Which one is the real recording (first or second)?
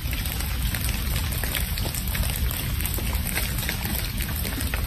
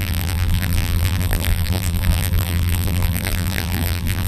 first